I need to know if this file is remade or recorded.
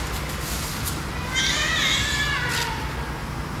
recorded